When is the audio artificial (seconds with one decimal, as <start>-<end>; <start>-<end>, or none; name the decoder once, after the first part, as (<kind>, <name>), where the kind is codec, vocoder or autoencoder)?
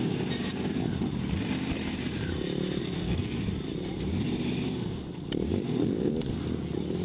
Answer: 2.8-3.4 (codec, SNAC)